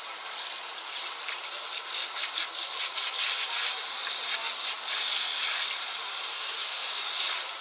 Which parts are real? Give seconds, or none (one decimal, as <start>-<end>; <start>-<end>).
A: 0.0-6.3; 7.0-7.6